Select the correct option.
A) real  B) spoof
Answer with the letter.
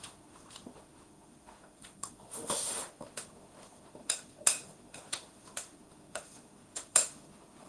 B